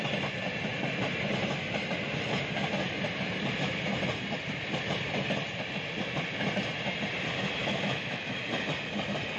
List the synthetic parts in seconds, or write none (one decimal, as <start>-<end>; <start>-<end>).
7.6-8.4